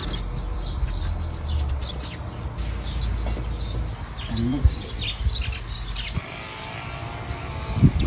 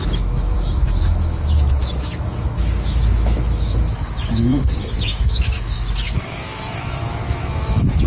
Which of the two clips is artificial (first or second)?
second